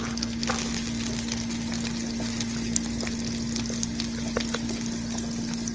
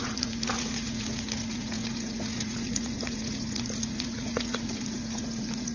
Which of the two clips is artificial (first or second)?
second